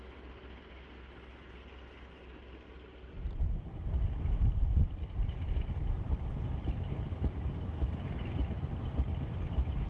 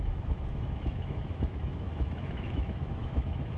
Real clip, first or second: first